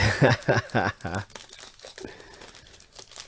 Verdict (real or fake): real